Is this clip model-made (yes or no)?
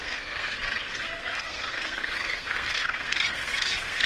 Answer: yes